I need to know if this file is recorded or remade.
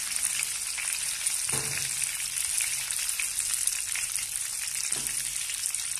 recorded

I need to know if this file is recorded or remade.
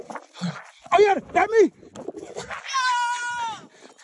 recorded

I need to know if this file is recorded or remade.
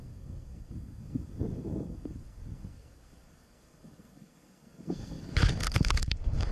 remade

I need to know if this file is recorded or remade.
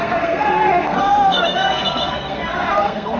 remade